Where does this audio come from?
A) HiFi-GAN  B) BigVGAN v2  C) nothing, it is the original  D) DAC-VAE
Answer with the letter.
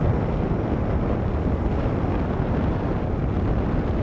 C